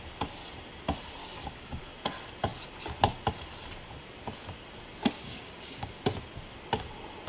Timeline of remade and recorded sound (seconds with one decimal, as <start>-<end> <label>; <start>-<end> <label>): 0.0-1.2 recorded; 1.2-1.8 remade; 1.8-5.2 recorded; 5.2-6.0 remade; 6.0-7.3 recorded